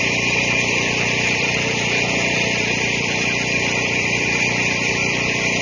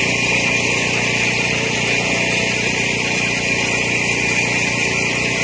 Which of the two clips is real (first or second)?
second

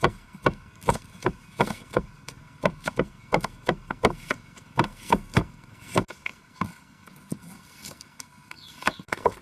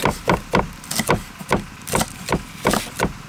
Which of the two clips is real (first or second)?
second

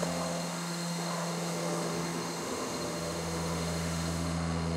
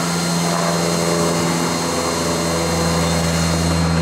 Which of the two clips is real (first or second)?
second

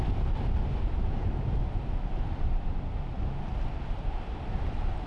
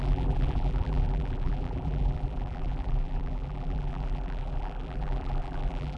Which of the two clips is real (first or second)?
first